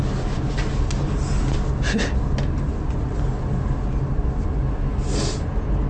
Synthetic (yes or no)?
no